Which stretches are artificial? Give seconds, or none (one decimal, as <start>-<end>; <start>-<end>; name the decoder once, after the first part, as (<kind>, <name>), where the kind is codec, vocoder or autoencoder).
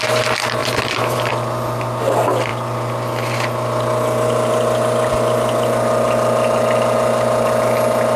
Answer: 0.6-1.3 (vocoder, BigVGAN v2)